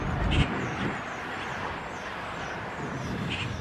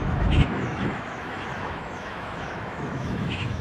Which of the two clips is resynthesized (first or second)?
second